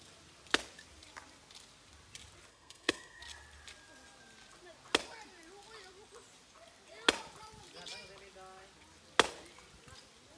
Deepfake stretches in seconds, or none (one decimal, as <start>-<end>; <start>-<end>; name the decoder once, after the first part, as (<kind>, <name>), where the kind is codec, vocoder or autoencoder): 2.5-3.2 (codec, SNAC)

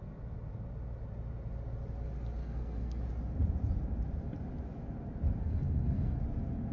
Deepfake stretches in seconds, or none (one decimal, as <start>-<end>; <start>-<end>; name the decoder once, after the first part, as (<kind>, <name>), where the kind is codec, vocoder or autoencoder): 2.4-3.0 (codec, SNAC); 5.4-6.2

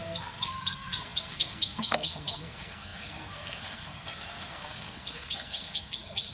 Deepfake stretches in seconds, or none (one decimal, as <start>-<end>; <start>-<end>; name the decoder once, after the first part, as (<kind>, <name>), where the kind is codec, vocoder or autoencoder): 0.0-6.3 (codec, SNAC)